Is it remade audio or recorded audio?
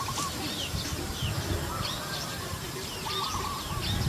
recorded